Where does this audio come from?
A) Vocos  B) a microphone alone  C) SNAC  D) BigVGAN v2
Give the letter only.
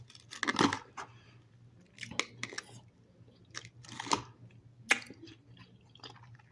B